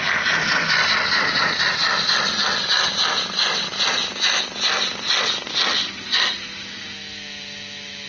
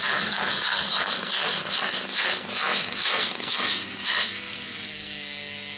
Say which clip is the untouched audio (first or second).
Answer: first